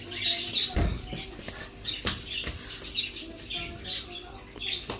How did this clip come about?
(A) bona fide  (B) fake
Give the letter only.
A